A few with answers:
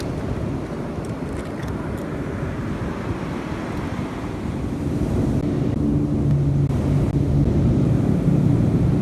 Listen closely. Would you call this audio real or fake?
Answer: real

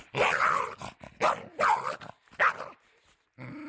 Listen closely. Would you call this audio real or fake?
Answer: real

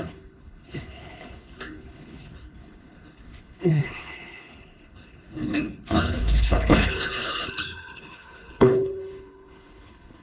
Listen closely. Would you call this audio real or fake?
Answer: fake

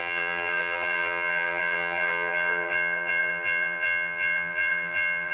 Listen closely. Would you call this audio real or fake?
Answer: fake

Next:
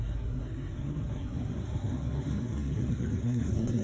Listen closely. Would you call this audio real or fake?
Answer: fake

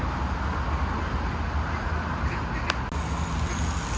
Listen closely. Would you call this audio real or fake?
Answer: real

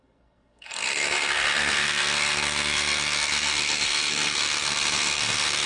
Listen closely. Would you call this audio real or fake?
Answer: fake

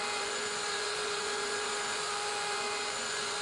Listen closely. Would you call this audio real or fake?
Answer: fake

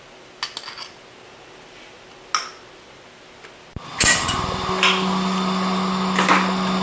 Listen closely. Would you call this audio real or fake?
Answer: real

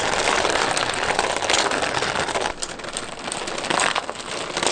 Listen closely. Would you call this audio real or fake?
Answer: real